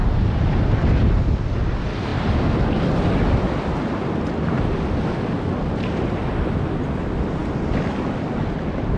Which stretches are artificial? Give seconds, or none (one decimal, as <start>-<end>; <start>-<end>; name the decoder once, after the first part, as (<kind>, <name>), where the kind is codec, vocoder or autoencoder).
0.0-0.7 (vocoder, BigVGAN v2)